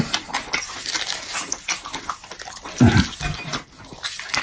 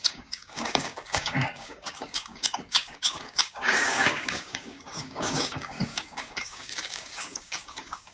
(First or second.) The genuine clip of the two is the first